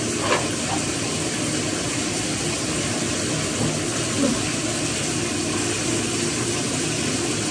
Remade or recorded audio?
recorded